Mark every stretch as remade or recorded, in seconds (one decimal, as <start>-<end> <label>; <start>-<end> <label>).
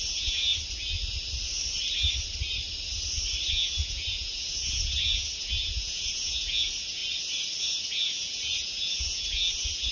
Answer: 0.0-0.5 remade; 0.5-3.5 recorded; 3.5-7.0 remade; 7.0-7.6 recorded; 7.6-9.9 remade